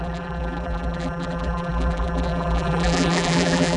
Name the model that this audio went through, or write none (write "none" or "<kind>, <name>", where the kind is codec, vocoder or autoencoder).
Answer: vocoder, BigVGAN v2